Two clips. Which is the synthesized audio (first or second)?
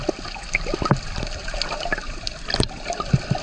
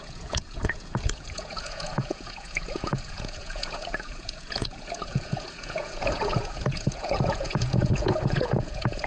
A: second